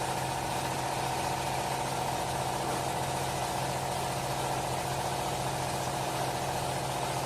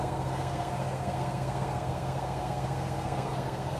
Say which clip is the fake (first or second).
second